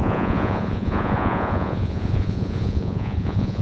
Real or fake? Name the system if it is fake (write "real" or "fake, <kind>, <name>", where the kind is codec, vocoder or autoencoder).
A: fake, vocoder, Vocos